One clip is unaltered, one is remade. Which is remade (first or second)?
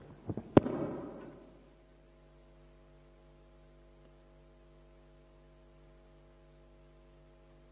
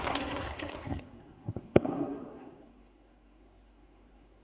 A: second